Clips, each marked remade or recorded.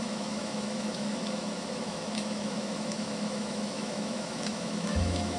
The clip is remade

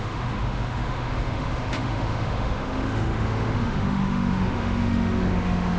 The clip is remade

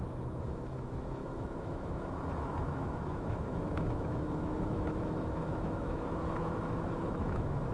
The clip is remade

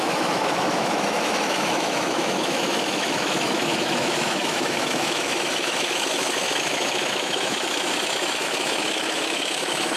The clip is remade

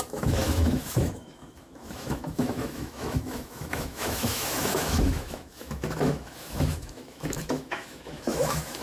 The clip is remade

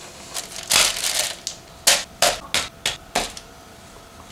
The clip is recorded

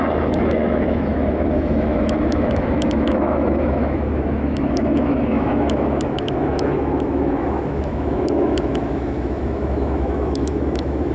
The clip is remade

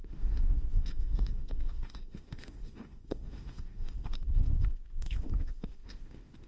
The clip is remade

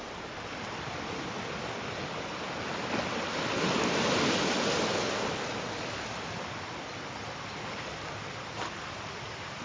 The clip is recorded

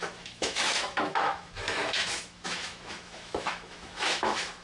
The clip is remade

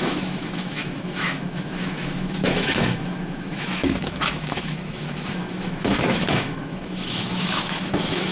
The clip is remade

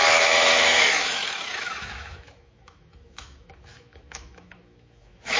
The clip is remade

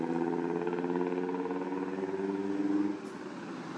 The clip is recorded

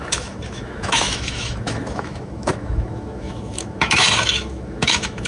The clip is remade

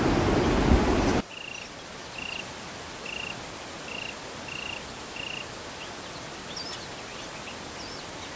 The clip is recorded